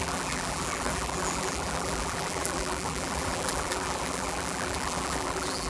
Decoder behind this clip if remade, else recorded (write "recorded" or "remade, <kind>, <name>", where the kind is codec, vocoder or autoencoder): remade, vocoder, BigVGAN v2